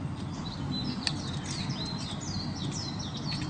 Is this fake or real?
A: real